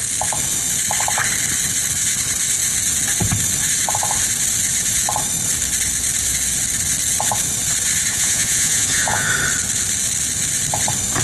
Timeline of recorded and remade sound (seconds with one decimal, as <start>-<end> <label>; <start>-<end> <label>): 0.0-8.1 recorded; 8.1-9.3 remade; 9.3-11.2 recorded